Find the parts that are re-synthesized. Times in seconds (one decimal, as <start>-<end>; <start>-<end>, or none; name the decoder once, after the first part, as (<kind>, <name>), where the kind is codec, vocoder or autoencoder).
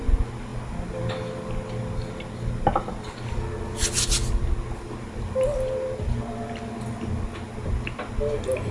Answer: none